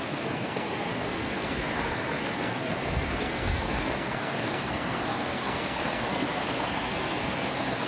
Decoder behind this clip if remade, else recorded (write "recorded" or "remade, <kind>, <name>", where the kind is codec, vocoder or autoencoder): remade, codec, SNAC